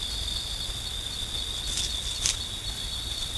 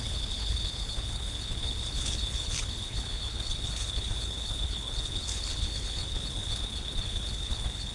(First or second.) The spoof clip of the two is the second